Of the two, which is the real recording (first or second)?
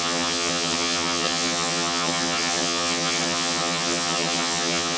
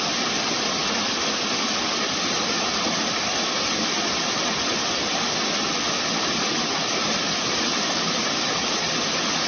second